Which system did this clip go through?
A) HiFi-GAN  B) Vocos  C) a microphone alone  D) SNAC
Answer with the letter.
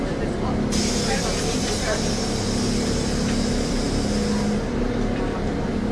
C